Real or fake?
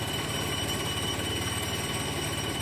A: fake